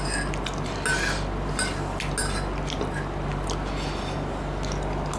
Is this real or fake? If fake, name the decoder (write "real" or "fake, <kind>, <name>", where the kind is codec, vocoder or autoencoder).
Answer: real